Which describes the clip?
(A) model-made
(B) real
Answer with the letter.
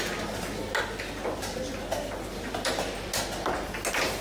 B